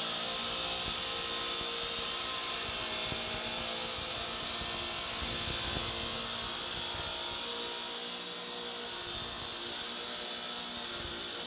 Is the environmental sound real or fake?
real